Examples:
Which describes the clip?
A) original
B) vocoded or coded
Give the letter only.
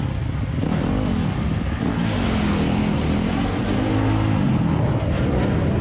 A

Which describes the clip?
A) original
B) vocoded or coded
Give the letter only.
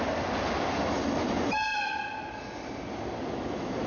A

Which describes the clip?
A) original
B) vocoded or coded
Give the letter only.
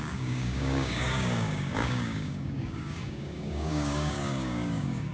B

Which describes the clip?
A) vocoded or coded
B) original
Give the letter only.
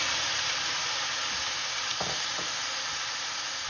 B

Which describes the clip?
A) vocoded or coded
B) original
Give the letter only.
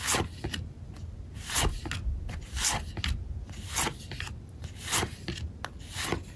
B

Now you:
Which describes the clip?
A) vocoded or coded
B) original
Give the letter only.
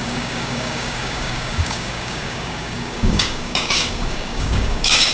A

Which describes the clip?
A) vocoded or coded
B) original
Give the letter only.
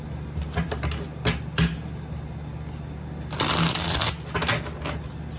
B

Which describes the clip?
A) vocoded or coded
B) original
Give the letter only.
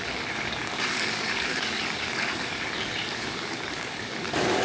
A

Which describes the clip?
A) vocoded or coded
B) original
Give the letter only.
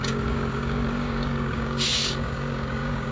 A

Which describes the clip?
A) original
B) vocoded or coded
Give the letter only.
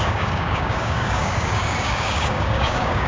B